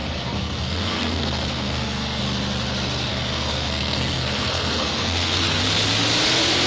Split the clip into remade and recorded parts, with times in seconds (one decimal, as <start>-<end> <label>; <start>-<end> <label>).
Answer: 0.0-2.2 remade; 2.2-3.1 recorded; 3.1-5.6 remade; 5.6-6.7 recorded